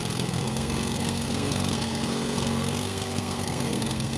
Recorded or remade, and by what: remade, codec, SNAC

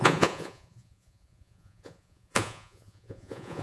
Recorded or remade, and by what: remade, vocoder, Vocos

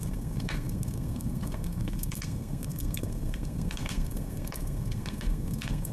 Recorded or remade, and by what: remade, codec, SNAC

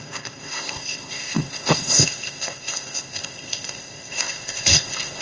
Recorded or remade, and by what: remade, codec, ZipCodec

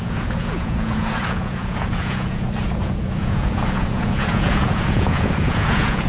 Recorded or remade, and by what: remade, vocoder, Vocos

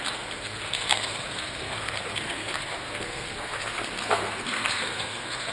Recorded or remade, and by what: remade, codec, SNAC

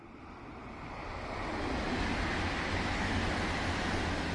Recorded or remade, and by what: recorded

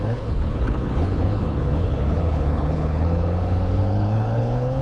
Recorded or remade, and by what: remade, codec, HILCodec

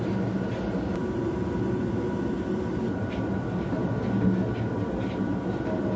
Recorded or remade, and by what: recorded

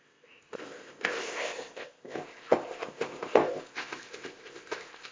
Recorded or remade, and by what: remade, codec, ZipCodec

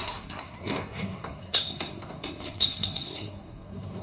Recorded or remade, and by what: remade, codec, SNAC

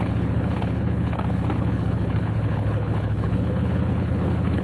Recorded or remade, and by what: remade, codec, HILCodec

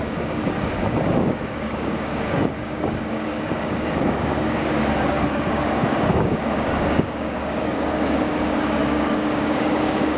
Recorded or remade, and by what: remade, codec, DAC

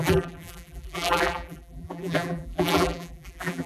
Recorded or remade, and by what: remade, vocoder, BigVGAN v2